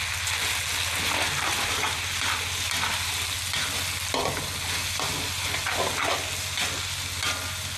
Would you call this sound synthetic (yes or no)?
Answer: no